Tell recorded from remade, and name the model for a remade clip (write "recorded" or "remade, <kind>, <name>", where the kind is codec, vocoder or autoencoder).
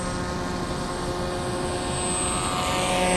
recorded